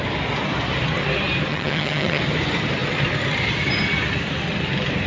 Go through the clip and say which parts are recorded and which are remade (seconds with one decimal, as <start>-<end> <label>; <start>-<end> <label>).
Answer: 0.0-1.5 recorded; 1.5-2.2 remade; 2.2-5.1 recorded